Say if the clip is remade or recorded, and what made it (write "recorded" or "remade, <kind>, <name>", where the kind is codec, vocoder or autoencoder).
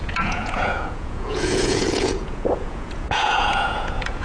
remade, vocoder, Vocos